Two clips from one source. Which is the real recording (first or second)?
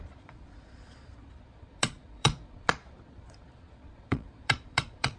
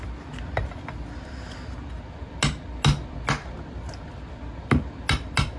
second